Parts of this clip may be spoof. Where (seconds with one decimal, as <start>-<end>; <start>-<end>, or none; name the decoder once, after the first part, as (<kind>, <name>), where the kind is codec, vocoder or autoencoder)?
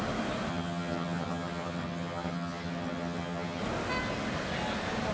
0.5-3.6 (vocoder, HiFi-GAN)